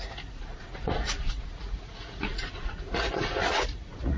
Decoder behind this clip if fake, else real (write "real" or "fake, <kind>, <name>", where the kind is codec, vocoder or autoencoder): fake, vocoder, Vocos